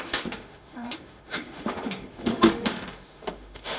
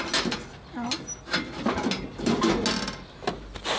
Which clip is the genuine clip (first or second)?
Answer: second